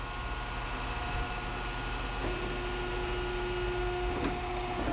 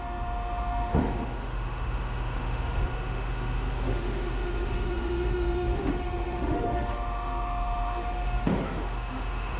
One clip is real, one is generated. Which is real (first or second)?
first